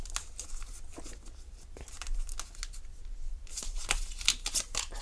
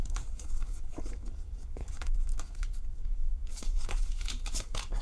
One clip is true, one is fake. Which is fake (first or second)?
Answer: second